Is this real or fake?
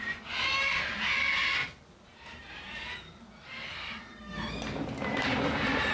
real